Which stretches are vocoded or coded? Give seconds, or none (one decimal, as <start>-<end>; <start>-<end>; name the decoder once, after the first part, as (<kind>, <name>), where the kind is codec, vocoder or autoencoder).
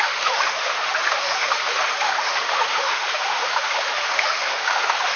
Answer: 0.0-5.2 (autoencoder, DAC-VAE)